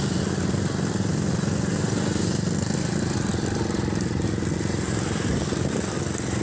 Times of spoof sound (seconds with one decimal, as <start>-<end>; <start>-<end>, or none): 3.3-6.4